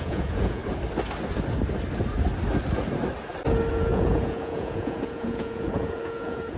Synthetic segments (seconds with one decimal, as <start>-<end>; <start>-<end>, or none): 0.0-0.6; 3.7-6.6

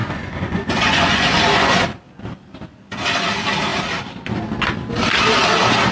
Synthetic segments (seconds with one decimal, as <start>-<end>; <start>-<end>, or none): 0.0-1.8

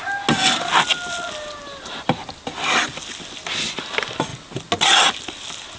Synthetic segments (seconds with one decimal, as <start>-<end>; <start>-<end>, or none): none

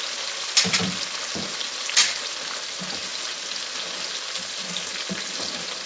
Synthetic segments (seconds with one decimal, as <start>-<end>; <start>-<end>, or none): none